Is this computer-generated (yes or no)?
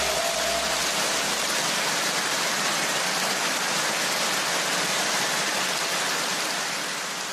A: no